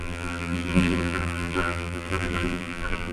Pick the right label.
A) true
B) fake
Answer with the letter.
B